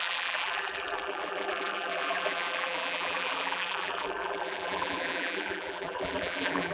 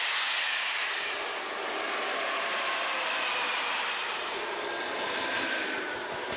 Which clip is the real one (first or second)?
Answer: second